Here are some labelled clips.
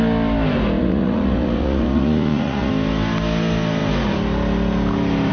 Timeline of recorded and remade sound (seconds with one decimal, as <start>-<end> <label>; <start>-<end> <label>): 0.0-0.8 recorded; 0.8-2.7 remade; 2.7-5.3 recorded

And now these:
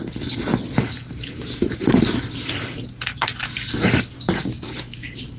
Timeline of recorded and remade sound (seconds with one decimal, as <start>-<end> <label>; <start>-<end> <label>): 0.0-4.4 recorded; 4.4-5.4 remade

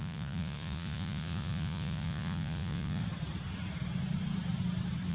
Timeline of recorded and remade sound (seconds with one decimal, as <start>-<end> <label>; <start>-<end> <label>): 0.0-3.0 remade; 3.0-5.1 recorded

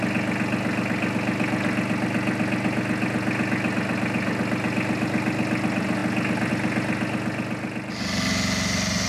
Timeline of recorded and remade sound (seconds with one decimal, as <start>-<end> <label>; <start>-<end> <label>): 0.0-9.1 recorded

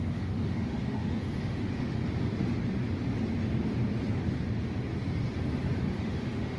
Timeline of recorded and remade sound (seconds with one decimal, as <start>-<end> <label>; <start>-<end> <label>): 0.0-2.0 remade; 2.0-6.0 recorded; 6.0-6.6 remade